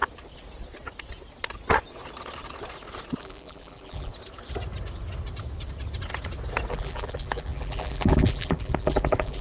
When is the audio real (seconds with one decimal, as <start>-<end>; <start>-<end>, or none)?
0.0-3.2; 4.1-6.7